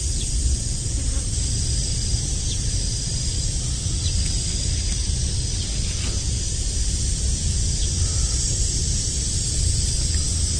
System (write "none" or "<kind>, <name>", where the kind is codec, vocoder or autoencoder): none